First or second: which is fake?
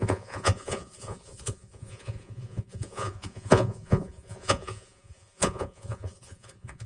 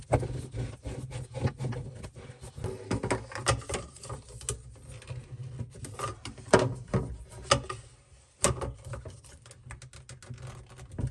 first